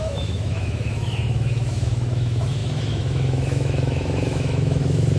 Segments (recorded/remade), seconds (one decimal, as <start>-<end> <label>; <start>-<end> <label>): 0.0-5.2 remade